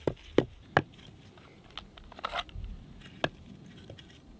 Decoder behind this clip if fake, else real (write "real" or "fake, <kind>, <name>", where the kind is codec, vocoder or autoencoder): real